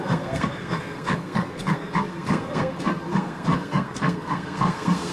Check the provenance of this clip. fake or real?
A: fake